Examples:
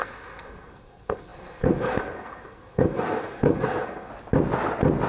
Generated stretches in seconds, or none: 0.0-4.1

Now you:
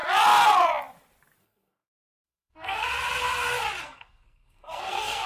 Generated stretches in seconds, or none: 1.4-2.9; 3.8-5.3